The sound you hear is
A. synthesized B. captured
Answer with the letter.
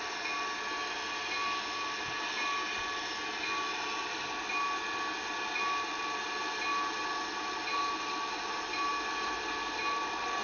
B